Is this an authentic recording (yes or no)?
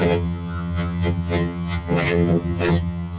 no